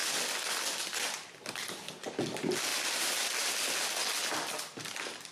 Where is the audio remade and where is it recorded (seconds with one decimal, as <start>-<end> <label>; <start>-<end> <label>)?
0.0-5.3 remade